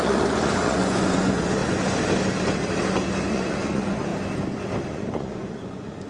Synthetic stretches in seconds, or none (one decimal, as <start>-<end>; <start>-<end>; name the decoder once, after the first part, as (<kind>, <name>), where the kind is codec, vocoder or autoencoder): 0.0-1.6 (vocoder, Vocos); 3.3-4.1; 4.9-6.1